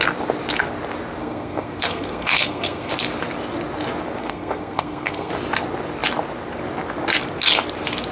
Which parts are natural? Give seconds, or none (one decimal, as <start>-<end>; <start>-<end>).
0.0-1.2; 2.9-4.2; 5.3-8.1